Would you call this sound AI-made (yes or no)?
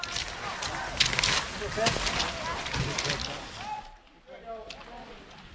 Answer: no